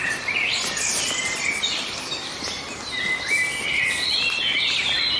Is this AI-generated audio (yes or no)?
no